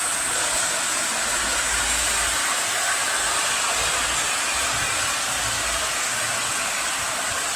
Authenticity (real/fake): real